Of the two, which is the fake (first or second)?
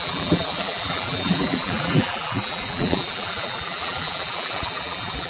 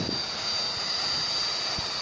first